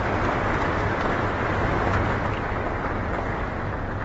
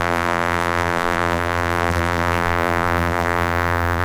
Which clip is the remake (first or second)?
second